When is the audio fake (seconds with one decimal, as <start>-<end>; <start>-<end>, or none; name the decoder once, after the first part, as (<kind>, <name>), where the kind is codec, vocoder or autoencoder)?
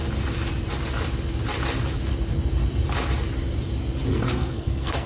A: 4.1-5.1 (codec, SNAC)